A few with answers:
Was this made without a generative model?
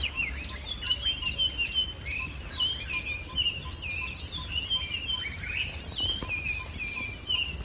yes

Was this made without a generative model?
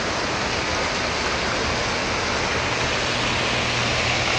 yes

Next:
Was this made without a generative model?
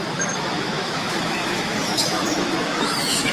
no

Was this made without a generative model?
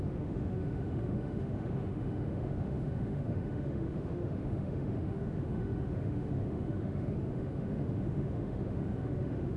no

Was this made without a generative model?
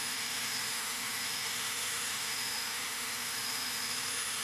no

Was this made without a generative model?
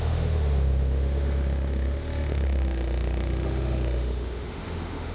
no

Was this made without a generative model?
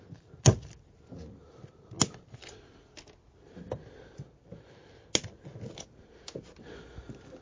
yes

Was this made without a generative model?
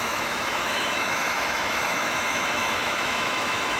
no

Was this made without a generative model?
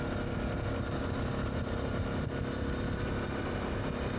yes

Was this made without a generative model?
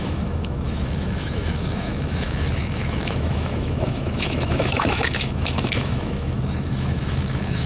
no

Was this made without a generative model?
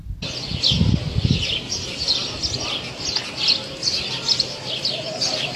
yes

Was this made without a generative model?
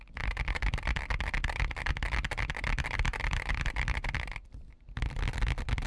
yes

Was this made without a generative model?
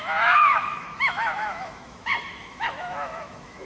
no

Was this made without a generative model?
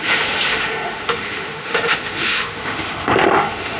no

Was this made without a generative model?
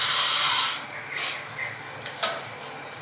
yes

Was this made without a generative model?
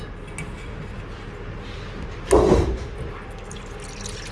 yes